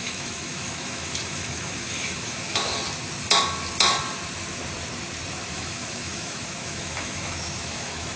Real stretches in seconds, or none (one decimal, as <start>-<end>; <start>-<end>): 2.7-5.5